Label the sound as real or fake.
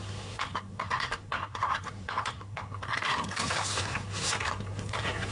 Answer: fake